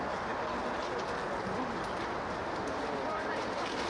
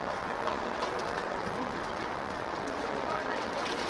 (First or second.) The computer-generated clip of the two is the second